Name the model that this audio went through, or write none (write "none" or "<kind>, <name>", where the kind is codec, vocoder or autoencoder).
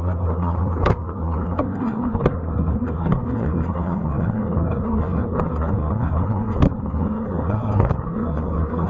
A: codec, SNAC